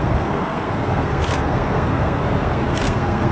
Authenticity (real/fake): fake